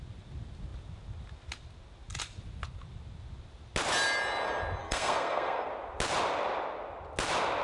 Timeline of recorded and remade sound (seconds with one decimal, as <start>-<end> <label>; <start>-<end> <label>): 0.0-4.8 recorded; 4.8-5.7 remade; 5.7-7.6 recorded